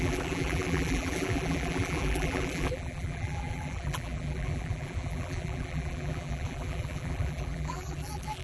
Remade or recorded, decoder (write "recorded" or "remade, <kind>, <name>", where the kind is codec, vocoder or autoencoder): remade, vocoder, BigVGAN v2